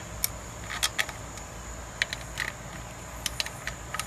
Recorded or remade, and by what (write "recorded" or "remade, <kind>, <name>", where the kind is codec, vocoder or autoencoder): recorded